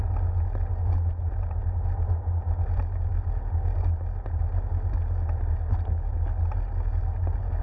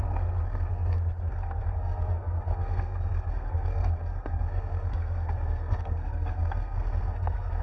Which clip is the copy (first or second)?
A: second